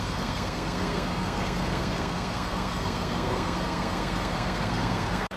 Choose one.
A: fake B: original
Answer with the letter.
A